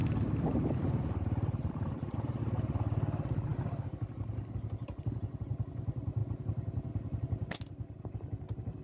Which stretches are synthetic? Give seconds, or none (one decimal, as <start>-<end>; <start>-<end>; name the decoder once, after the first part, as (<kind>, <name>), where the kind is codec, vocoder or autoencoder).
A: 0.0-2.4 (vocoder, BigVGAN v2)